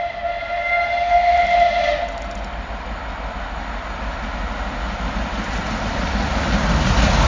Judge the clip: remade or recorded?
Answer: recorded